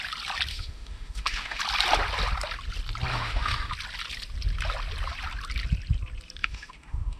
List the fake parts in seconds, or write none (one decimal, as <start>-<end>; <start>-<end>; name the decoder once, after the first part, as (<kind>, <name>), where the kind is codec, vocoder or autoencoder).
0.5-1.6 (autoencoder, DAC-VAE); 3.1-3.7; 6.4-7.2